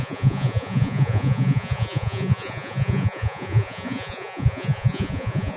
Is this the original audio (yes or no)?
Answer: no